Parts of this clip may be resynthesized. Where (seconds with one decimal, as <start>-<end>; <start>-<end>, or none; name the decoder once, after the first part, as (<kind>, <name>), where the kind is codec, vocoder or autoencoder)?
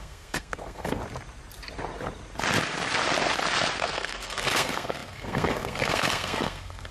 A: 0.0-1.0 (codec, SNAC); 3.8-6.9